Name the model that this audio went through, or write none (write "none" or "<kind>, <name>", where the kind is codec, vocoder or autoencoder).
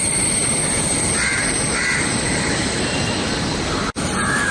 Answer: none